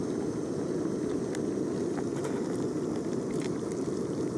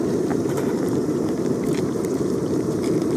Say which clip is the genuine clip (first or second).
first